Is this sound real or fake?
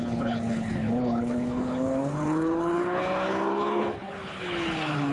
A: fake